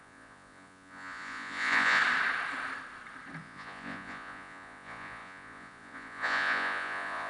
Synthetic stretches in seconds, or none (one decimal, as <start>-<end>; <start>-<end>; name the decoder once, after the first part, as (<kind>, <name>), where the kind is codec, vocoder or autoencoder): 0.0-2.0 (vocoder, Vocos); 3.4-7.3